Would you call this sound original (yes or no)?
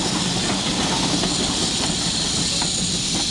yes